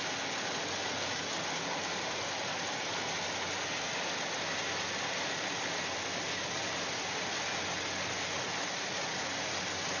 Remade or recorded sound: recorded